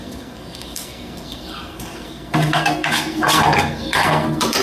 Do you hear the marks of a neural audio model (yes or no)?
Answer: yes